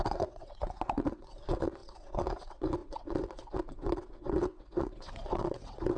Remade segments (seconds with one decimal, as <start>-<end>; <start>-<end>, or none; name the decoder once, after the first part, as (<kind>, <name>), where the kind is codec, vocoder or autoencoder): 0.0-6.0 (vocoder, WaveNeXt)